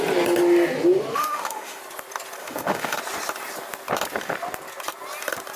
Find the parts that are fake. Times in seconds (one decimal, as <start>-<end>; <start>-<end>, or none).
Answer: 1.1-1.8; 2.4-3.0